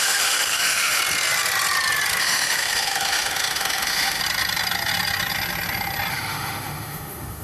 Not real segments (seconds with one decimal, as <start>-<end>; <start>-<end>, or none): 0.0-1.0; 2.2-4.2; 6.1-7.4